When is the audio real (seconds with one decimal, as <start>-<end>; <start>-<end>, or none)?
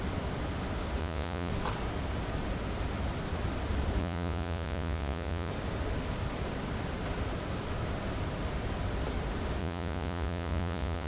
0.0-1.0; 1.5-4.0; 5.5-9.6